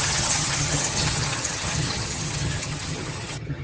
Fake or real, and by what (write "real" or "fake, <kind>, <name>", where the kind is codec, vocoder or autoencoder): fake, vocoder, HiFi-GAN